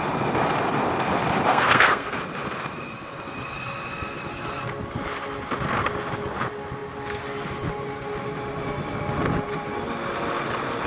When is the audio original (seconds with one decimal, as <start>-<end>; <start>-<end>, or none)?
0.0-1.5; 2.2-10.9